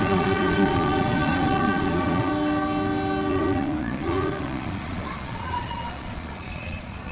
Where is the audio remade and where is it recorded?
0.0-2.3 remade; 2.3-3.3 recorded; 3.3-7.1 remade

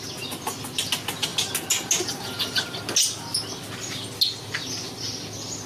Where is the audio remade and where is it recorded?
0.0-5.7 recorded

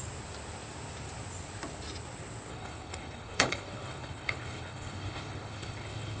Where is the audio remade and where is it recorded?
0.0-2.5 recorded; 2.5-6.2 remade

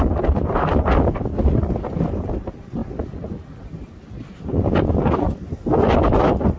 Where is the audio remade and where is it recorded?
0.0-6.6 recorded